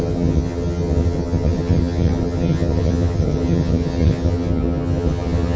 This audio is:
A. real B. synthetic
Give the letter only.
B